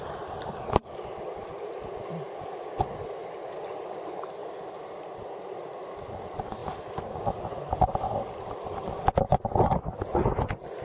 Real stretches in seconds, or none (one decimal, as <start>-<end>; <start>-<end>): 0.0-10.8